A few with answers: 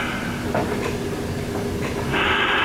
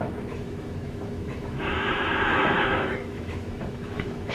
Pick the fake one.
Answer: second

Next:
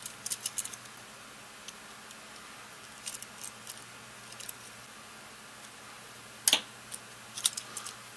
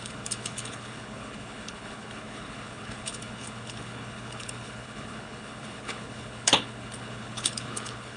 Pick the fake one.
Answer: second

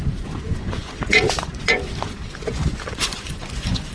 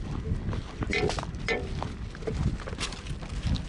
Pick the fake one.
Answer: first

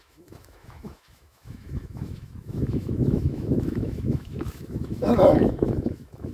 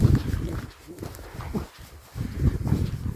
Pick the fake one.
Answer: first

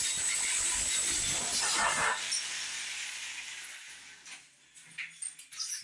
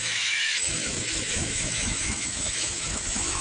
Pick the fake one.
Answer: second